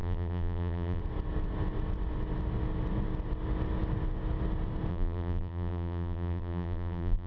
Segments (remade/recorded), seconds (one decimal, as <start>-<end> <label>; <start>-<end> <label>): 0.0-1.0 remade; 1.0-4.9 recorded; 4.9-7.3 remade